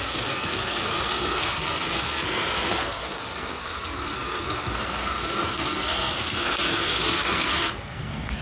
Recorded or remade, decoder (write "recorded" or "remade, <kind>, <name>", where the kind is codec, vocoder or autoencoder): remade, codec, SNAC